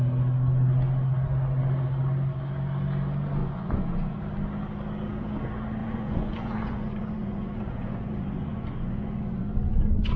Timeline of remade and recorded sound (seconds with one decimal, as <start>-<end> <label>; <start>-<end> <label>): 0.0-3.4 recorded; 3.4-4.2 remade; 4.2-5.8 recorded; 5.8-10.2 remade